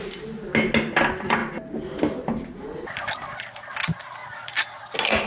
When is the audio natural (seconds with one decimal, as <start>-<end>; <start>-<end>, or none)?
0.0-5.3